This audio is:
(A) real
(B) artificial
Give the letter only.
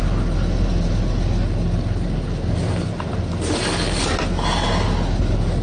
A